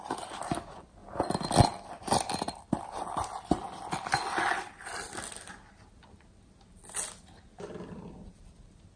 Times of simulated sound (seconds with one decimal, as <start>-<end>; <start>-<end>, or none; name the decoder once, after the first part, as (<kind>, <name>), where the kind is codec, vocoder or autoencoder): none